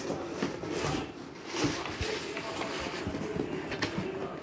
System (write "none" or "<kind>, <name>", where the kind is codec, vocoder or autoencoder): none